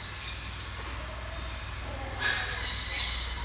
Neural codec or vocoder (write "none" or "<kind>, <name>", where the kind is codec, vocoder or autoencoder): none